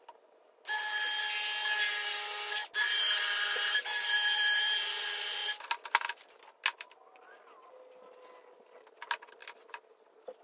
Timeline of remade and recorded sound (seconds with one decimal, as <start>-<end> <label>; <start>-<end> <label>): 0.0-10.4 recorded